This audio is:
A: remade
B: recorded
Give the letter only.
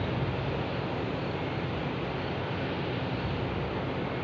B